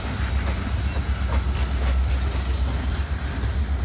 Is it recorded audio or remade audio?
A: recorded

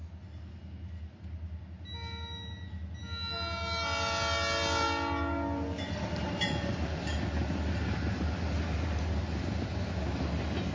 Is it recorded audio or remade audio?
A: recorded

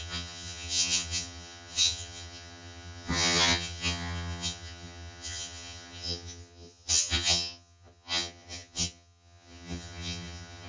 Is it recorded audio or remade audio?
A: remade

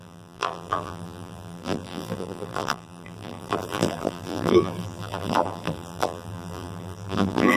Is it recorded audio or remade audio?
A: remade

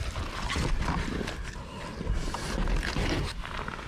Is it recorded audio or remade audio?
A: recorded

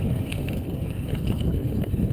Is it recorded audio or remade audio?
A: remade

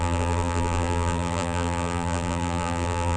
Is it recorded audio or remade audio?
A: remade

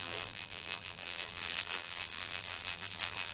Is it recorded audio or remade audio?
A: remade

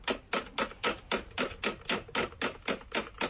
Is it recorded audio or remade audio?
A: recorded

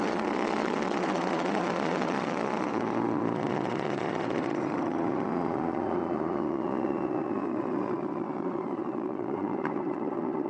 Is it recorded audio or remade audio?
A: remade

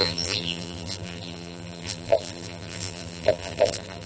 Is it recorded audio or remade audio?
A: remade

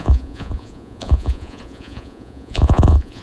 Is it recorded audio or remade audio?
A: remade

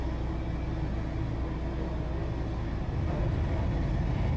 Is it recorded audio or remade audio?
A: recorded